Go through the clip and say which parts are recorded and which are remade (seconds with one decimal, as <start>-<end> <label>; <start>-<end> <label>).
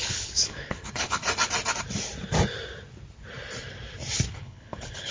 0.0-1.2 remade; 1.2-4.3 recorded; 4.3-5.1 remade